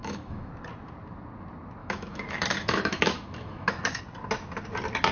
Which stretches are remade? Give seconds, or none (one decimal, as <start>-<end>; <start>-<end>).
0.0-0.5; 1.8-4.0